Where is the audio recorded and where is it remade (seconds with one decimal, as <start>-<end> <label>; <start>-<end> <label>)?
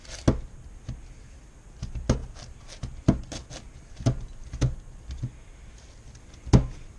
0.0-7.0 recorded